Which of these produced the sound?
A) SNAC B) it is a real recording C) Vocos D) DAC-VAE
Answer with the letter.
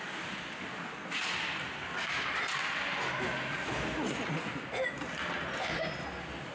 B